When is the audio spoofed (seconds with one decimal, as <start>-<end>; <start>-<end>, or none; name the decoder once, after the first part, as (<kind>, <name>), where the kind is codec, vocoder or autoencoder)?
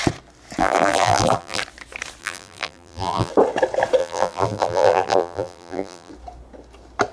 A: 0.6-1.6 (vocoder, BigVGAN v2); 2.2-3.3; 4.0-6.1